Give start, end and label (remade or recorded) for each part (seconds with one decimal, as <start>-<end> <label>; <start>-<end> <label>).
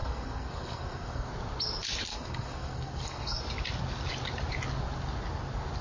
0.0-1.3 remade; 1.3-2.1 recorded; 2.1-3.4 remade; 3.4-5.8 recorded